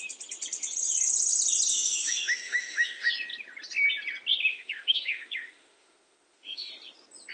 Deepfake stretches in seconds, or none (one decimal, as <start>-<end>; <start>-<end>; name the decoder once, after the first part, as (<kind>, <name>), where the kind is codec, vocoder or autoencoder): 1.7-3.1 (autoencoder, DAC-VAE); 4.5-6.7